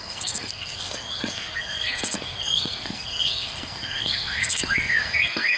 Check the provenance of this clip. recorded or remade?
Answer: remade